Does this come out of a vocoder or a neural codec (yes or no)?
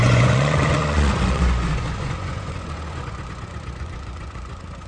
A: yes